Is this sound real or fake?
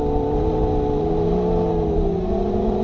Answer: real